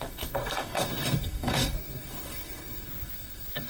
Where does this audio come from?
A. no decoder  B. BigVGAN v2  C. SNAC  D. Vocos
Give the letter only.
C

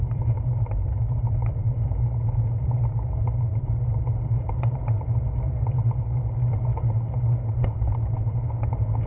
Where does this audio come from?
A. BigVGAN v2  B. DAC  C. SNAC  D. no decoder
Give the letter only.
A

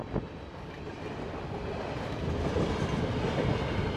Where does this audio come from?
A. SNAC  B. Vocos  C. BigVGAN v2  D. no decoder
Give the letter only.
D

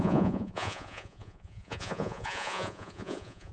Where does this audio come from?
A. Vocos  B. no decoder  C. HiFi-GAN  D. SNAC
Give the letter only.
A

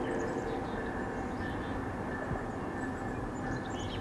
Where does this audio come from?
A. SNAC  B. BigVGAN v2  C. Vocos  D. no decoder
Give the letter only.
D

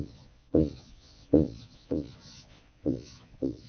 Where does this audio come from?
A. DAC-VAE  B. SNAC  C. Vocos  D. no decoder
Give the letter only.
C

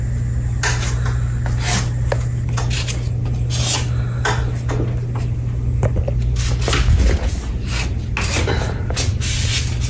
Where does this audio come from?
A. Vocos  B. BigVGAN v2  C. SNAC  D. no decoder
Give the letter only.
D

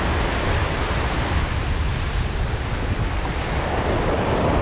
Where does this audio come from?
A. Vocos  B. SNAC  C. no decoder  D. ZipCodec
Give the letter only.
C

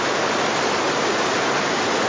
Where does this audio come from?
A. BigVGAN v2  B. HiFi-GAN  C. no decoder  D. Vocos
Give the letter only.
C